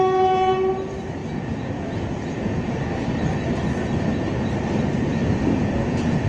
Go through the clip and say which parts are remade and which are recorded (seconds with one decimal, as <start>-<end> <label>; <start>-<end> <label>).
0.0-1.2 recorded; 1.2-2.8 remade; 2.8-5.1 recorded; 5.1-6.3 remade